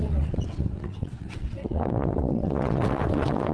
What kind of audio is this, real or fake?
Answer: fake